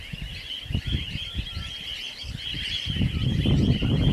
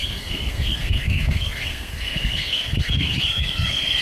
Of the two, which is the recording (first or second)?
first